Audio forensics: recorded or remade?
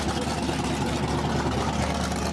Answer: recorded